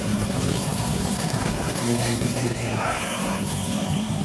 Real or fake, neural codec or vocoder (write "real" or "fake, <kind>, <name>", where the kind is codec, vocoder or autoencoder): fake, codec, SNAC